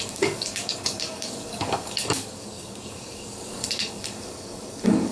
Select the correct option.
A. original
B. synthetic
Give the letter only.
B